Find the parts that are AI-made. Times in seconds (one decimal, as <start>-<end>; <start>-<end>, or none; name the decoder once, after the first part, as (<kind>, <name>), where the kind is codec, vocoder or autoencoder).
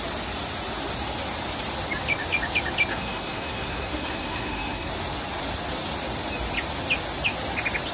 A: 2.9-4.9 (codec, SNAC)